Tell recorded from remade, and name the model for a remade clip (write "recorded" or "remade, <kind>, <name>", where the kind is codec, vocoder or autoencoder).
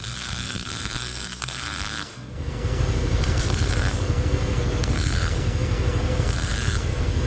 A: remade, codec, SNAC